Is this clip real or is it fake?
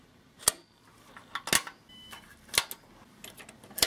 real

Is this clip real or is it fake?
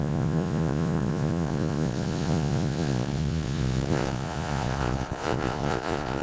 fake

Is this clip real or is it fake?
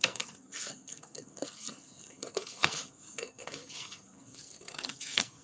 fake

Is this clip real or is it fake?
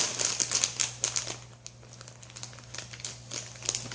real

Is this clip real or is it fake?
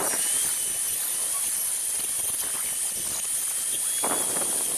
real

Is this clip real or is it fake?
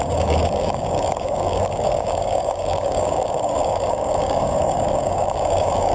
fake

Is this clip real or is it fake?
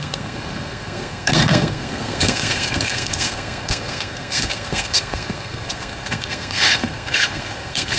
fake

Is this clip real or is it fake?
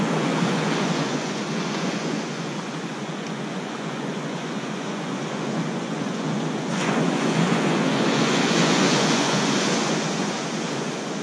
fake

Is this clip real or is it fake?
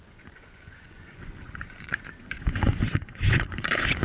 fake